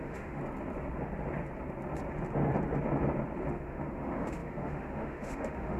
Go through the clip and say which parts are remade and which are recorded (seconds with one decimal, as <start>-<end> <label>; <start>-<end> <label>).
0.0-0.4 remade; 0.4-3.5 recorded; 3.5-5.8 remade